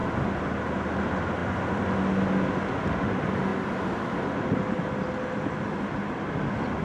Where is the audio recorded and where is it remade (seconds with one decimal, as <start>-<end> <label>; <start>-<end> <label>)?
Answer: 0.0-6.8 recorded